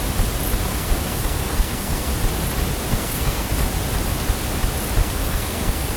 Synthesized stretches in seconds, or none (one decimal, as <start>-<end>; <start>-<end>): 0.7-2.1; 2.9-3.5; 5.0-6.0